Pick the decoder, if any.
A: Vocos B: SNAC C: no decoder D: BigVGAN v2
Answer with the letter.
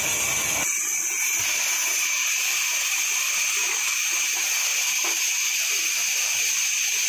C